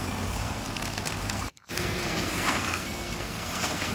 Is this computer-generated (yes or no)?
yes